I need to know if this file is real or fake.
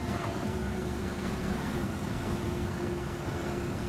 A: fake